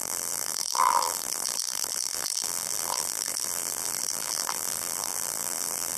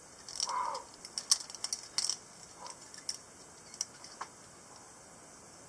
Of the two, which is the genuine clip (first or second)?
second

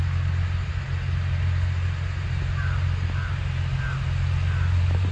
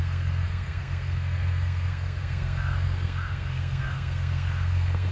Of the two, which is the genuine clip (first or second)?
first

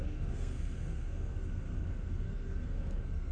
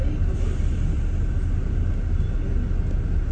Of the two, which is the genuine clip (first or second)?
second